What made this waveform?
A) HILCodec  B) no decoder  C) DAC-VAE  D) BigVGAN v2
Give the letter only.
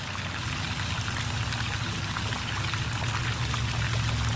B